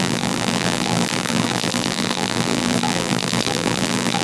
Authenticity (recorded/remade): remade